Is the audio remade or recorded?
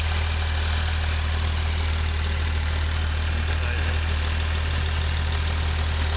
recorded